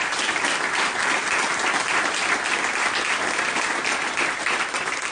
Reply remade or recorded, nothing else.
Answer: recorded